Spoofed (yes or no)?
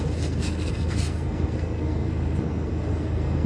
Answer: yes